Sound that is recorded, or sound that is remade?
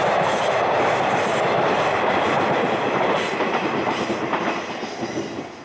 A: recorded